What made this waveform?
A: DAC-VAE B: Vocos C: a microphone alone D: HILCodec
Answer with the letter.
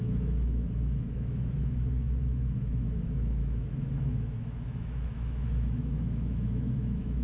A